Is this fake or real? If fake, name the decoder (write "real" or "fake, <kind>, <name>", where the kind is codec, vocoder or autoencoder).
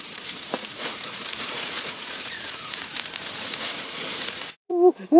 fake, vocoder, Vocos